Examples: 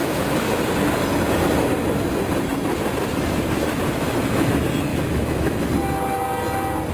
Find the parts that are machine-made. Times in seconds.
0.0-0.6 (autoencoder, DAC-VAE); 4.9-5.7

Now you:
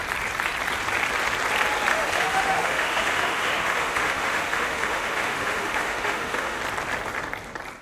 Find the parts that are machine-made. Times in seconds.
1.9-6.6 (autoencoder, DAC-VAE)

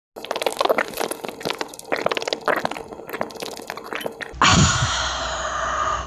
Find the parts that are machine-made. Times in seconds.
4.5-5.0 (autoencoder, DAC-VAE)

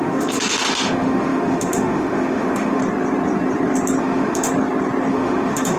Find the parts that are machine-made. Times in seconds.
0.0-2.8 (autoencoder, DAC-VAE); 4.0-4.5; 5.1-5.8

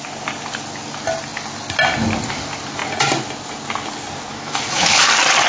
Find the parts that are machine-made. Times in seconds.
4.3-5.0 (autoencoder, DAC-VAE)

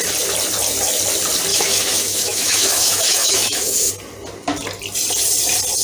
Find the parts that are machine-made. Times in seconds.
1.5-3.9 (autoencoder, DAC-VAE)

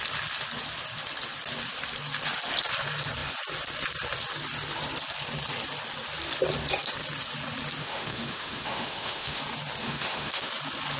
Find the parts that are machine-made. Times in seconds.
7.8-9.4 (autoencoder, DAC-VAE); 9.8-10.5

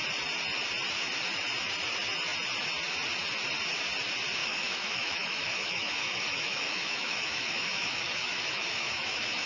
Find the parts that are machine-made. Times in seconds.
4.4-9.5 (autoencoder, DAC-VAE)